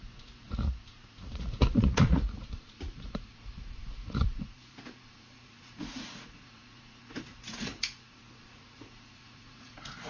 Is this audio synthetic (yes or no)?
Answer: yes